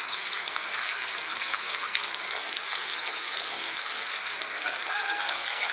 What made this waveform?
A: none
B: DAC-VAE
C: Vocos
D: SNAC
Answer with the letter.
D